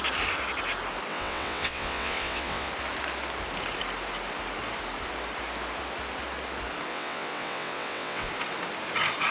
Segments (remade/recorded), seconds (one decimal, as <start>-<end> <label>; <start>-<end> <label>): 0.0-1.1 recorded; 1.1-2.7 remade; 2.7-6.9 recorded; 6.9-8.3 remade; 8.3-9.3 recorded